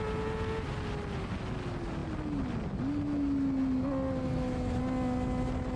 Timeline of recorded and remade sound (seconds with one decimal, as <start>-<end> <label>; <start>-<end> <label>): 0.0-5.8 recorded